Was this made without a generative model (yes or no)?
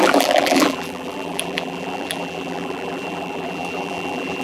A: no